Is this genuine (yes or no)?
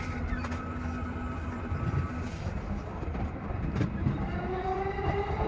no